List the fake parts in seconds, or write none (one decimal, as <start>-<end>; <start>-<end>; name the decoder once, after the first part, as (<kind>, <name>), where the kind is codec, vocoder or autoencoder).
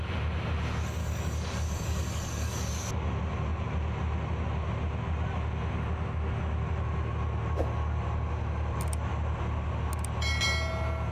1.0-2.7 (codec, DAC)